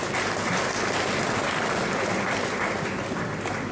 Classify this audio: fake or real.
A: real